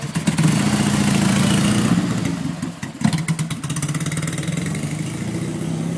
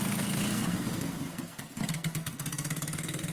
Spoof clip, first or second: second